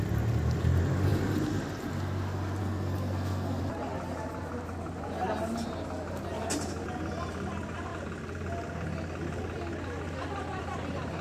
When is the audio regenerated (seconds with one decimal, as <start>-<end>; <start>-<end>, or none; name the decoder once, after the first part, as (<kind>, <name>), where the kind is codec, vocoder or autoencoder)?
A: 2.6-3.6 (codec, SNAC)